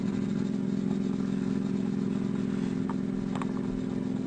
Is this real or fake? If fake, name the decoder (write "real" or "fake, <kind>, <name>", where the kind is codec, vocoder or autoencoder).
real